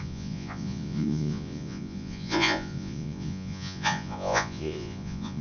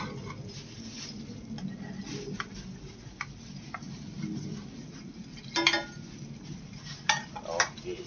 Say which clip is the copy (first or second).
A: first